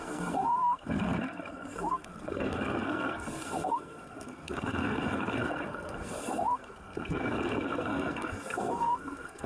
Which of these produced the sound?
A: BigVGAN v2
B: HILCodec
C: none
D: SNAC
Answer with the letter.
D